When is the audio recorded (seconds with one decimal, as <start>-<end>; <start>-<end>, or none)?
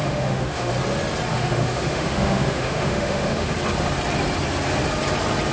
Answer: 0.7-1.3; 3.5-5.5